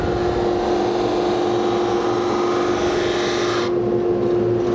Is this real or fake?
real